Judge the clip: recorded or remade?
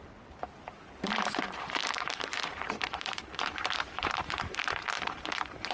remade